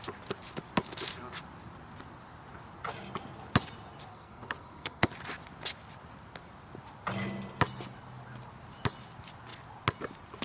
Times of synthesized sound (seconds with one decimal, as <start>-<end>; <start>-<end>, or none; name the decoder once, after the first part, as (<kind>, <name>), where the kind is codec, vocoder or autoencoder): 4.1-5.1 (codec, SNAC)